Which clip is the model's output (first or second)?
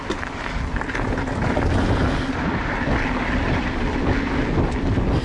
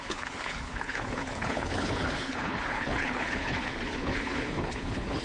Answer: second